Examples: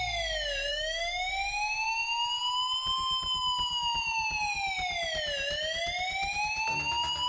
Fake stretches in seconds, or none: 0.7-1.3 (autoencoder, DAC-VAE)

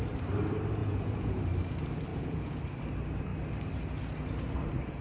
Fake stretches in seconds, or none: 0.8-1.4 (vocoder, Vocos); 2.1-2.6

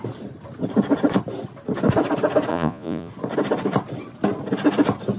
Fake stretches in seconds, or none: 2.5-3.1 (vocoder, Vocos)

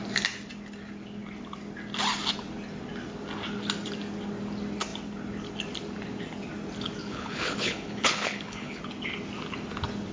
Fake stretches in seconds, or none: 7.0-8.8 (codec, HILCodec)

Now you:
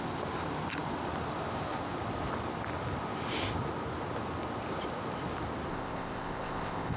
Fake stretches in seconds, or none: 5.7-7.0 (codec, ZipCodec)